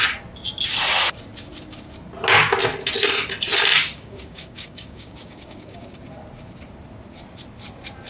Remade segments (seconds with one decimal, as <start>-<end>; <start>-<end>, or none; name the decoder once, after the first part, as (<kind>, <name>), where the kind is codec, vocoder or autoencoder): 3.8-6.0 (codec, DAC)